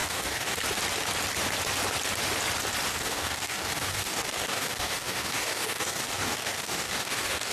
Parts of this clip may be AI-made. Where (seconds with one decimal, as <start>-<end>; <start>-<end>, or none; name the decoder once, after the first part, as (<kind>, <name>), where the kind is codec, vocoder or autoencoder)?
0.0-0.6 (codec, DAC); 2.9-7.5